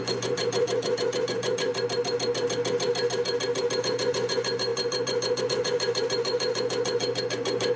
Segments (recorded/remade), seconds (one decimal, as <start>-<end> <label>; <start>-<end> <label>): 0.0-1.7 remade; 1.7-3.8 recorded; 3.8-7.8 remade